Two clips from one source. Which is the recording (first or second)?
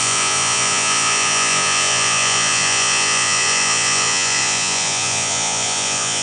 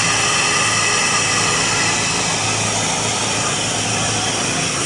second